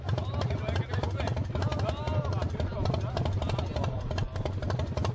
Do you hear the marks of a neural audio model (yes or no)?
no